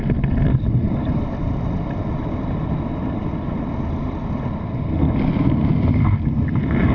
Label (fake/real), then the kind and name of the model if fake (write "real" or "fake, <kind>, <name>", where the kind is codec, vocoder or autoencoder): real